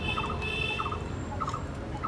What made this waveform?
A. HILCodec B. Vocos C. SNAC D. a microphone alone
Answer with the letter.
D